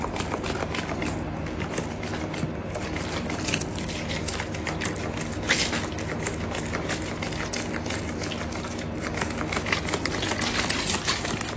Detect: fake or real real